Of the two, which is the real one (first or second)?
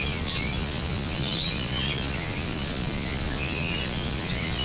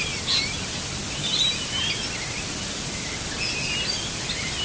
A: second